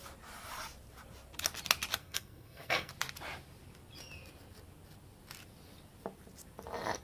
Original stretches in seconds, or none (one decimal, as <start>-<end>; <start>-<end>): 0.0-2.0; 2.9-7.0

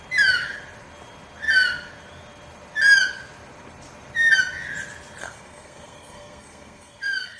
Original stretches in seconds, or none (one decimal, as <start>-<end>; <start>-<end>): 0.0-5.2

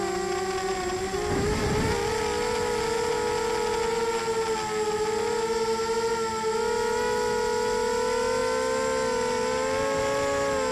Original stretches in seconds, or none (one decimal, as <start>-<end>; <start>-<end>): 0.0-10.7

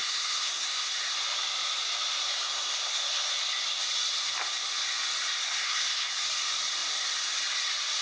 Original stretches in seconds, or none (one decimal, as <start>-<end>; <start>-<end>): 0.9-2.2; 3.3-5.4; 6.1-8.0

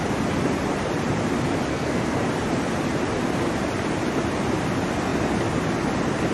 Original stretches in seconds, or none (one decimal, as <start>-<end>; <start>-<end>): 0.0-1.7; 2.2-6.3